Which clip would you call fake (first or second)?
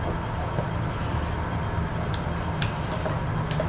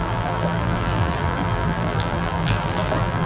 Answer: second